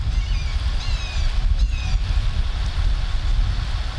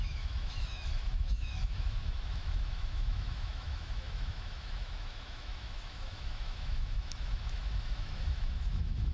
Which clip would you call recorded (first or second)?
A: first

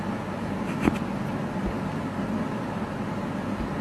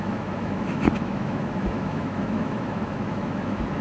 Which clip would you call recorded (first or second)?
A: first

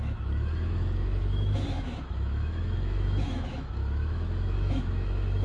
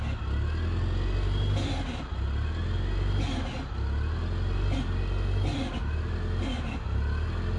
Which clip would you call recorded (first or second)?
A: second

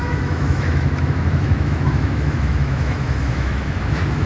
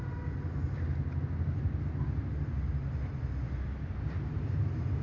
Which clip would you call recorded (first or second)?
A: second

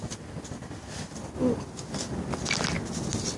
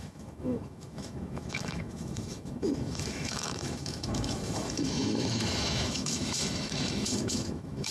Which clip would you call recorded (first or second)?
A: first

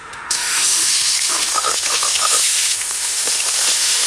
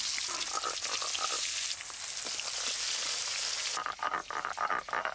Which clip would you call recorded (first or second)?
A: second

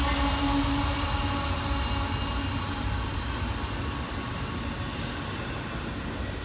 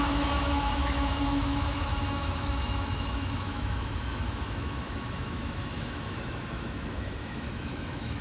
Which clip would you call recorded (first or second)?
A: first